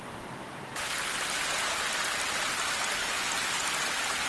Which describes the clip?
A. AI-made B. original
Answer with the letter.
B